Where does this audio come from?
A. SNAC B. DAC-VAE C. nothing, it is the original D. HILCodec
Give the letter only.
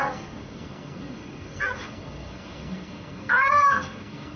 A